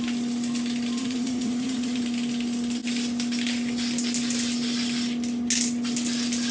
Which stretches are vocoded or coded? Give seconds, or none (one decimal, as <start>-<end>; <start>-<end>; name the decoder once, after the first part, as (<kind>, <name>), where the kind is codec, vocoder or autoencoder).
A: 1.0-2.0 (vocoder, Vocos)